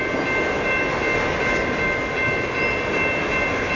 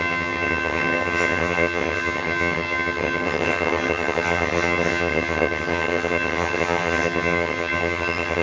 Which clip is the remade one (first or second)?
second